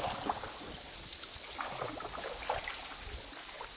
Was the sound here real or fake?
real